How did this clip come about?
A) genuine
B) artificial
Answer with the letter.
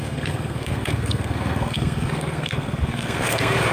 B